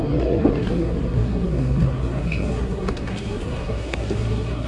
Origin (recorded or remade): remade